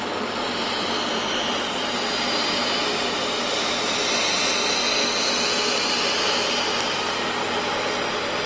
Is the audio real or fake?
real